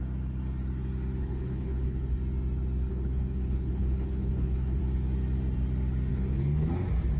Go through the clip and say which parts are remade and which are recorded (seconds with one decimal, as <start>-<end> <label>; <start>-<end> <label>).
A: 0.0-1.2 recorded; 1.2-2.1 remade; 2.1-2.9 recorded; 2.9-4.8 remade; 4.8-6.1 recorded; 6.1-6.7 remade; 6.7-7.2 recorded